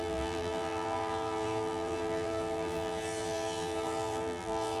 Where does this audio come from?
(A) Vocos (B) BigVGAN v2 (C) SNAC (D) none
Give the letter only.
B